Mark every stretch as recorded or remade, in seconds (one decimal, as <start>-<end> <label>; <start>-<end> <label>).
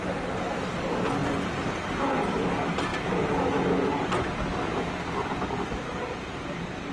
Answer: 0.0-6.9 recorded